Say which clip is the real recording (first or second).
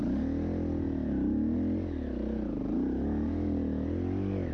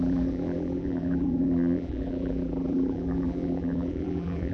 first